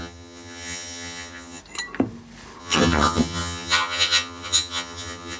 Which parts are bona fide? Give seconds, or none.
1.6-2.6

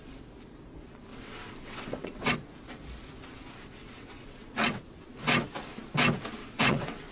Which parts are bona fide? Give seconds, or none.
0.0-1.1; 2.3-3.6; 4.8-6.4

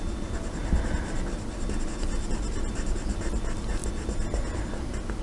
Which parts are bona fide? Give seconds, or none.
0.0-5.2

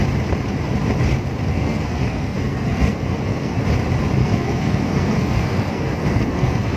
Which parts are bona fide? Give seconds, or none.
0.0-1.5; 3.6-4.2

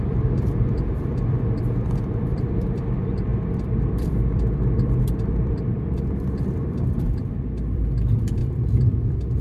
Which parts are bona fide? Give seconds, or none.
none